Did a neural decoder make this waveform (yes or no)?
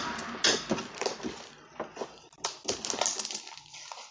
no